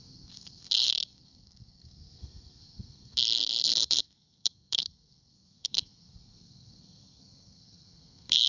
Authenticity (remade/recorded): remade